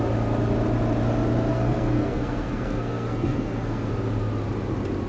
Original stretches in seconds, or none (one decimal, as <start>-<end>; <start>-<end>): 0.0-1.5; 3.9-5.1